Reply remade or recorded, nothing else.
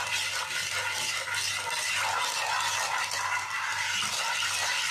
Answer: recorded